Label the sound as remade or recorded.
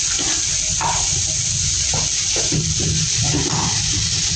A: recorded